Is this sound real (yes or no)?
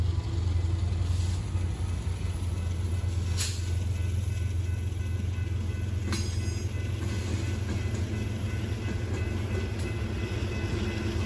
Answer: yes